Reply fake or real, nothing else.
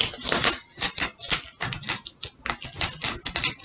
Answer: real